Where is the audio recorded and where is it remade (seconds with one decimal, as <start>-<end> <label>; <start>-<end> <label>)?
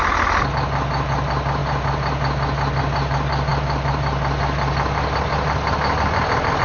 0.0-6.6 recorded